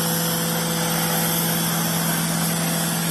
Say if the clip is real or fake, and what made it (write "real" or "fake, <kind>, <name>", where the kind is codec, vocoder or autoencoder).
real